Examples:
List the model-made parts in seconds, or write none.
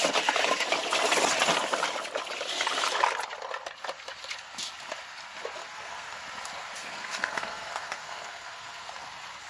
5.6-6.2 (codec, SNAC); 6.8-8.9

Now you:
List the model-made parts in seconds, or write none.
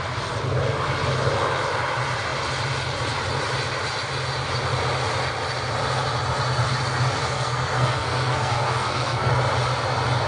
7.2-9.3 (codec, SNAC)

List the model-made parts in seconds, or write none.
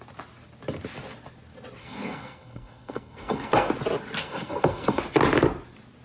1.8-3.7 (codec, SNAC); 4.2-5.0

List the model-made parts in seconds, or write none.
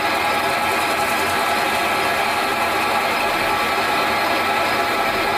none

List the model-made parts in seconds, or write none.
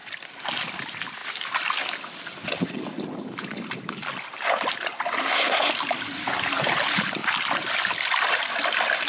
5.2-5.7 (codec, SNAC)